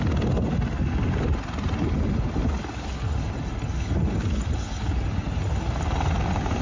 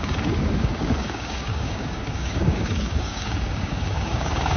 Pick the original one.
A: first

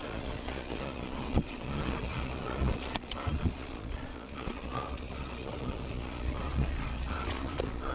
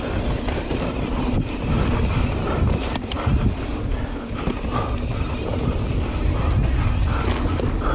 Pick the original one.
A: second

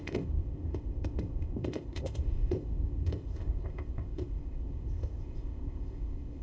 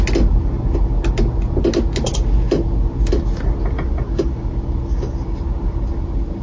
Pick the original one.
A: second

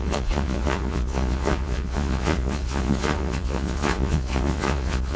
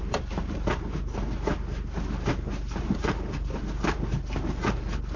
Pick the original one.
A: second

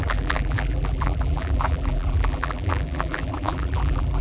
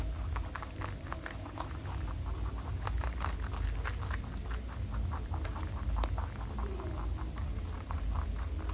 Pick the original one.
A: second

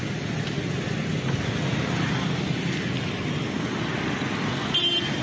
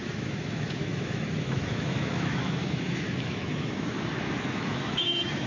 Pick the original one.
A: first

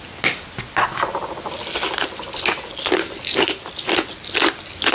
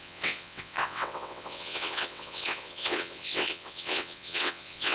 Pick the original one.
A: first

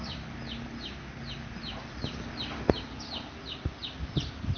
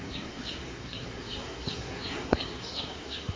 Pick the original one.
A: first